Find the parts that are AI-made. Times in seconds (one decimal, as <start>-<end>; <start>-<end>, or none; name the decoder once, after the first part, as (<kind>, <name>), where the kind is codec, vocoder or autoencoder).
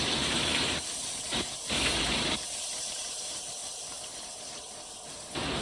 0.0-5.6 (vocoder, BigVGAN v2)